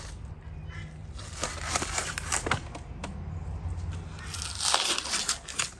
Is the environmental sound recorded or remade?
recorded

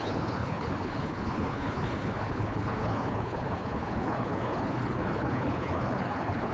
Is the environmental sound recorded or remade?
remade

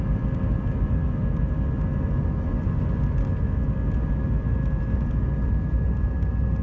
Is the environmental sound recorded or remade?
recorded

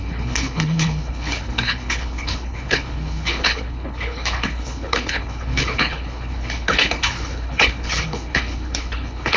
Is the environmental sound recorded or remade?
remade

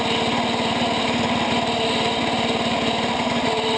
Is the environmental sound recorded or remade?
recorded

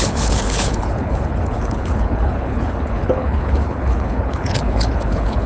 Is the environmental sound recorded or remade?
remade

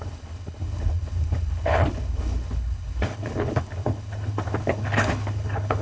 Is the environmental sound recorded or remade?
remade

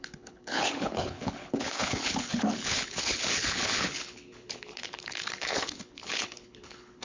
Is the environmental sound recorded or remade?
remade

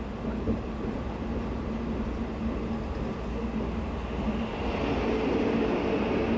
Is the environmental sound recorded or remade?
recorded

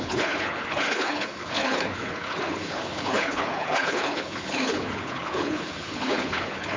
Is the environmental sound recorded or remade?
remade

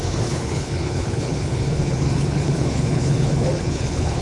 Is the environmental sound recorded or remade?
remade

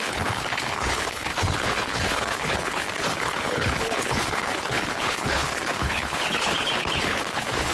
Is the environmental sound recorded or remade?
remade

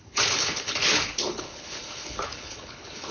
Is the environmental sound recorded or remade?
remade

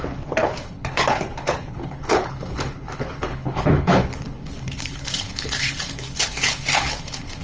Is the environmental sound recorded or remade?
remade